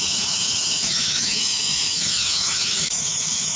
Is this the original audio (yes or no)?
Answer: no